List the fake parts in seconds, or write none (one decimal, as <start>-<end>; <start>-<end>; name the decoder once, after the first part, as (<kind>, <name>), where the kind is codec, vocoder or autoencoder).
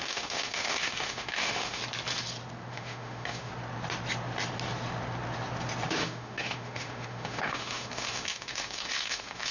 0.0-1.8 (autoencoder, DAC-VAE); 2.7-3.5; 5.9-9.5